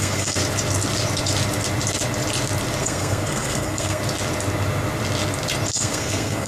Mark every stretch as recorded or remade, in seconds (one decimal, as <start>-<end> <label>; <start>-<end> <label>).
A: 0.0-0.4 remade; 0.4-2.8 recorded; 2.8-4.0 remade; 4.0-5.7 recorded; 5.7-6.5 remade